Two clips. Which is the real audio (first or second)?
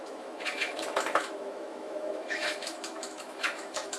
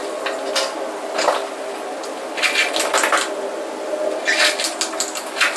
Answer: second